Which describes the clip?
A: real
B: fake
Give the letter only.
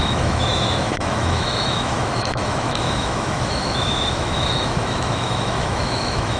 B